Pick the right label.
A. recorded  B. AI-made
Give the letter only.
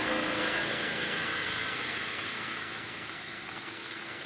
B